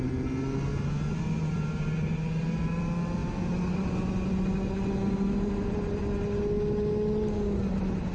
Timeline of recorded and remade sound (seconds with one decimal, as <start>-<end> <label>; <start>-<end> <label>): 0.0-8.1 recorded